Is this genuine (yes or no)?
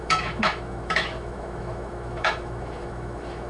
no